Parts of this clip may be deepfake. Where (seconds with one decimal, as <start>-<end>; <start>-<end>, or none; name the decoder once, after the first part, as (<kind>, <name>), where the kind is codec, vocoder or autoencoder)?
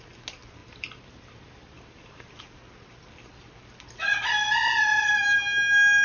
0.6-2.4 (vocoder, BigVGAN v2)